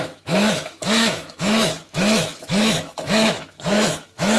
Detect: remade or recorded remade